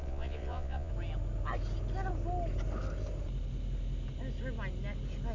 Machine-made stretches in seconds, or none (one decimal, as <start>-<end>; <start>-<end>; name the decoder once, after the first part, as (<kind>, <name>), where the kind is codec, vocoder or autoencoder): 0.0-0.9 (vocoder, Vocos)